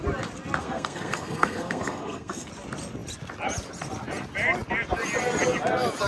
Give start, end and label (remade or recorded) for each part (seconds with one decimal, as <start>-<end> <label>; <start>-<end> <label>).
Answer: 0.0-0.6 recorded; 0.6-2.5 remade; 2.5-6.1 recorded